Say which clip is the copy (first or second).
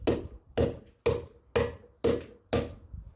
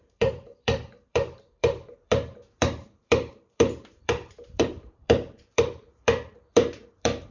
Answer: second